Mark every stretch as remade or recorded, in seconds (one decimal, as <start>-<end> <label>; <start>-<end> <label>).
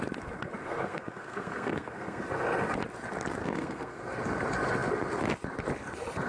0.0-0.6 recorded; 0.6-2.2 remade; 2.2-3.4 recorded; 3.4-4.0 remade; 4.0-6.3 recorded